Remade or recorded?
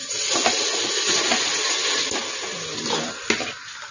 recorded